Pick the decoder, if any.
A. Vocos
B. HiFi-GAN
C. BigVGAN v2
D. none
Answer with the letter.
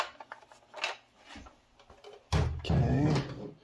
D